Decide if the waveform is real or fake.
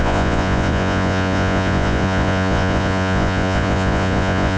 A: fake